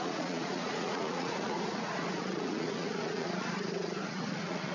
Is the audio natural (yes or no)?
no